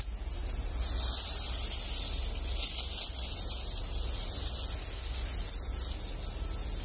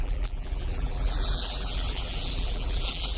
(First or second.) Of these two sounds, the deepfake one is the second